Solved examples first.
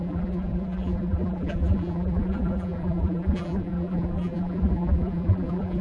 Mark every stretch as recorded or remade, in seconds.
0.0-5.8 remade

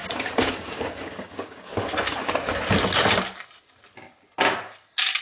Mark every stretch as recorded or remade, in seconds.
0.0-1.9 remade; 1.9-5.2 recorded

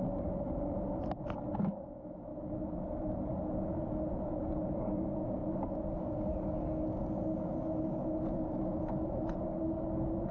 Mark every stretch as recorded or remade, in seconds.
0.0-10.3 recorded